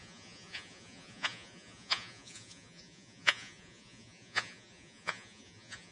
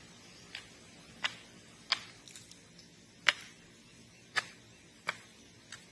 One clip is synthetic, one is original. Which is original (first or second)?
second